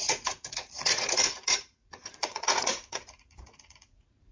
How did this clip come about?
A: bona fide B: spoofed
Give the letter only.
B